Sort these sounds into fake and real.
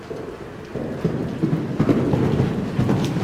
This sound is real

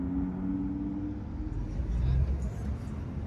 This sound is real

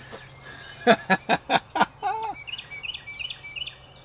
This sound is real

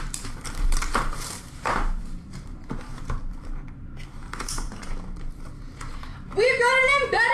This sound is fake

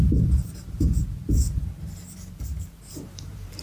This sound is fake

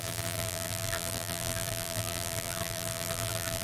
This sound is fake